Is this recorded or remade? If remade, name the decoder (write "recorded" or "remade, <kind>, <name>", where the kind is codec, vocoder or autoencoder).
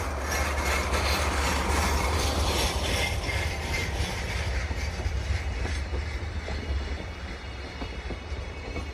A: remade, vocoder, BigVGAN v2